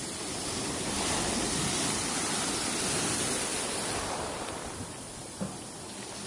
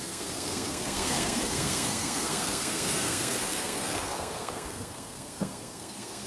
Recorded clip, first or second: first